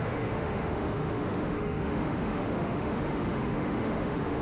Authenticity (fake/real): fake